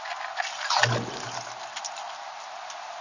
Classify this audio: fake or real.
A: real